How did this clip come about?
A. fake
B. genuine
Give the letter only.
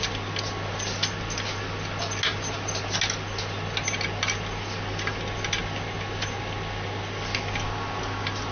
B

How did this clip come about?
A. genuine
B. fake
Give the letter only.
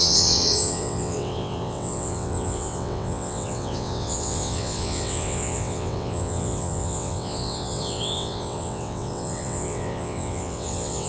B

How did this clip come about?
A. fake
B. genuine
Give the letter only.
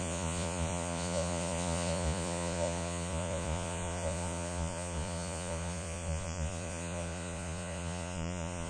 A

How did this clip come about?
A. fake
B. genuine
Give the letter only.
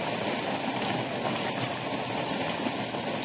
B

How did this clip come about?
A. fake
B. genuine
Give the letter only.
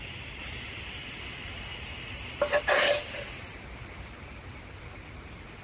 B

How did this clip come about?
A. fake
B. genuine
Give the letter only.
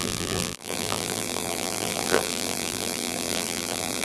A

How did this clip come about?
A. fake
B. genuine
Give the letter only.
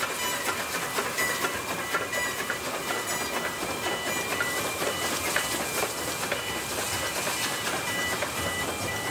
B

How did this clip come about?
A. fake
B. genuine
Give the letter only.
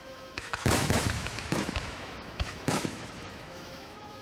A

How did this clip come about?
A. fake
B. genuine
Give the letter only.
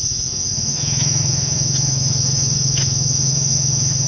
A